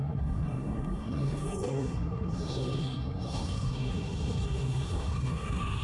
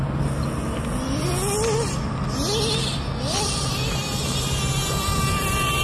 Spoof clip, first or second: first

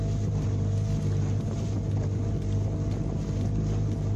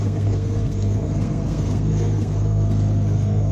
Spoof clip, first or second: second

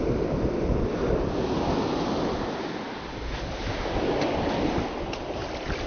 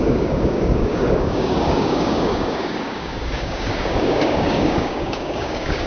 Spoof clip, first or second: second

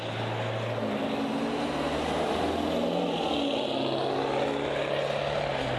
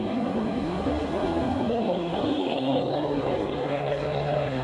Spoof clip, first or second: second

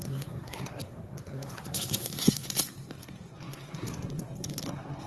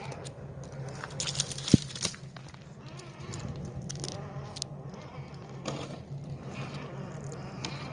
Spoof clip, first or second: first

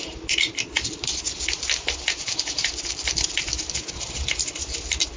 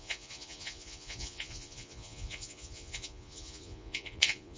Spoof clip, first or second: second